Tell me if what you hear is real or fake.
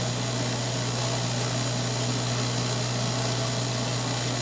real